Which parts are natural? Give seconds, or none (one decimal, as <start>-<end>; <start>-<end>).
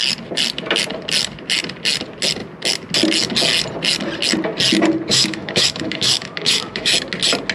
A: 0.0-5.1; 6.9-7.5